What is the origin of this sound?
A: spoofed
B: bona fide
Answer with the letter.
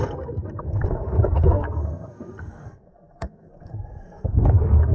A